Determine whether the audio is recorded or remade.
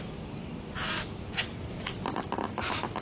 recorded